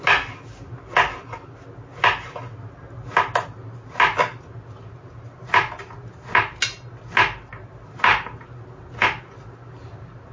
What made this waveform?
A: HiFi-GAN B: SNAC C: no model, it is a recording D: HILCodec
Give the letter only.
C